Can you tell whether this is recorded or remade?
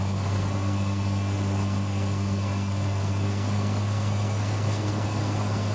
remade